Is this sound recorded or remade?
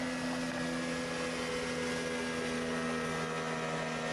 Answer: recorded